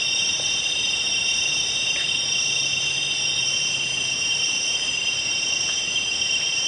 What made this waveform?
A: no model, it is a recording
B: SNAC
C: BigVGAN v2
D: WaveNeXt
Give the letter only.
C